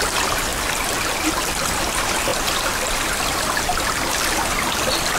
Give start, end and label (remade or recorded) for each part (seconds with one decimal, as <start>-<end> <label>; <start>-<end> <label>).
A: 0.0-2.3 recorded; 2.3-4.7 remade; 4.7-5.2 recorded